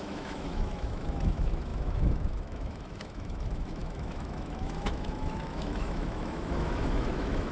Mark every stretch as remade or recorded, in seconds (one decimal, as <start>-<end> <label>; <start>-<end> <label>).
0.0-7.5 remade